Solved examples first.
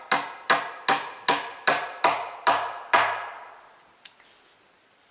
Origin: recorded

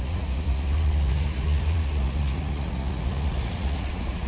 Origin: remade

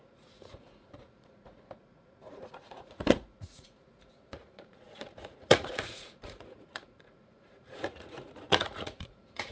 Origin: remade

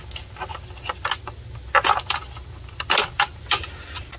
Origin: recorded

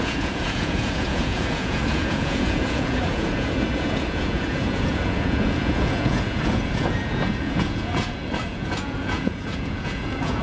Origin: remade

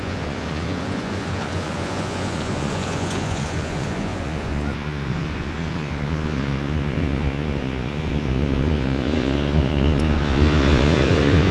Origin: remade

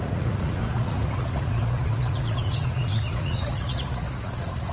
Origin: remade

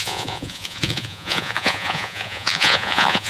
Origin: remade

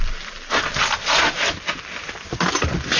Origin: recorded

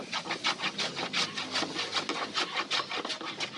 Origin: recorded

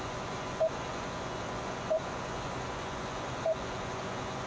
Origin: remade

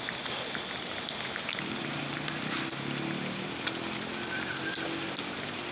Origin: recorded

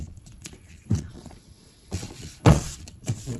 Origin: remade